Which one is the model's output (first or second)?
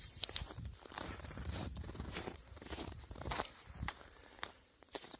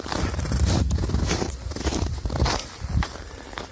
first